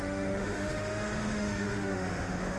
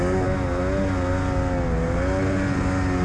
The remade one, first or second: first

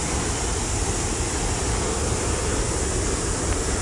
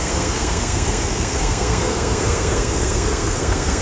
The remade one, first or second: second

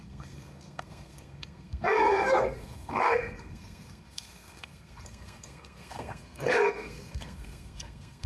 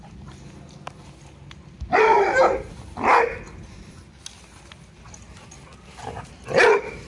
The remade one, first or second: first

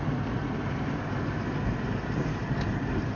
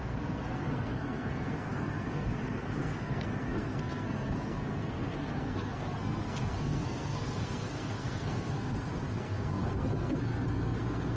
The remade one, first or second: second